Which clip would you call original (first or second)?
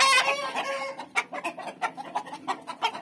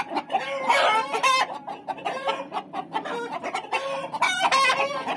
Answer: first